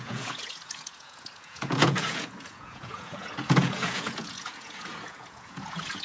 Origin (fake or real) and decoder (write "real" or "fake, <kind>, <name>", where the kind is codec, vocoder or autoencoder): fake, vocoder, Vocos